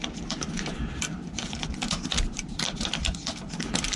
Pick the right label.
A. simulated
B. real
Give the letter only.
A